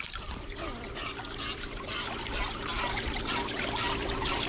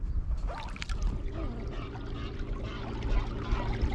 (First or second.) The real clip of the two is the second